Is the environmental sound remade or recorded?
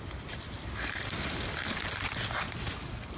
recorded